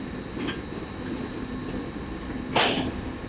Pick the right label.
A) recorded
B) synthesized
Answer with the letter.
A